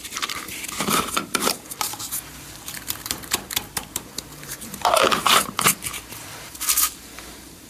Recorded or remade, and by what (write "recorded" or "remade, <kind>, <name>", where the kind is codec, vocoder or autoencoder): remade, vocoder, BigVGAN v2